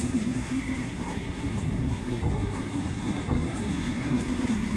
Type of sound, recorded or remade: remade